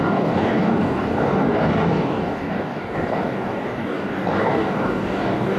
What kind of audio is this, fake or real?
fake